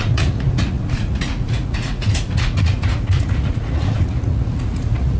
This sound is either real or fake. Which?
fake